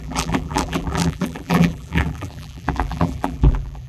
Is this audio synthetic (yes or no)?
yes